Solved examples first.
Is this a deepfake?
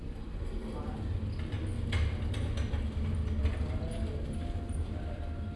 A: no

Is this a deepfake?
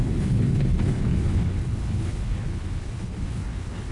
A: yes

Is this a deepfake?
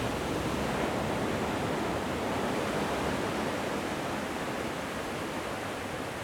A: no